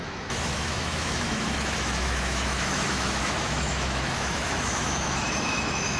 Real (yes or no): no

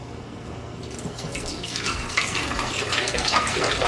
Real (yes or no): no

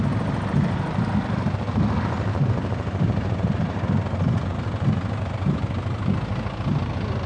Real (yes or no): yes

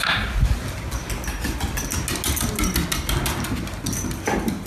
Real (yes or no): yes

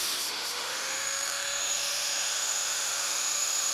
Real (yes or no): no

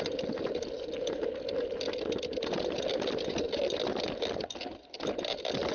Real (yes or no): yes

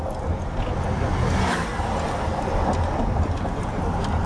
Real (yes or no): yes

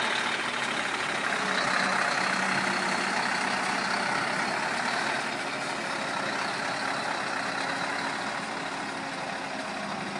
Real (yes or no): yes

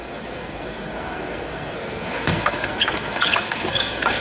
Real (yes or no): no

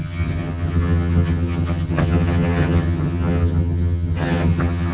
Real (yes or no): no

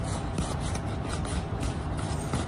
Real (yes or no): yes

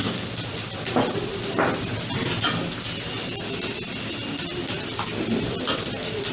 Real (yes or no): yes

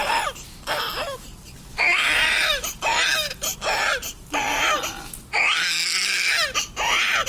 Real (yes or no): yes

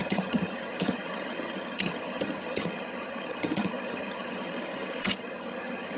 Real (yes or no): no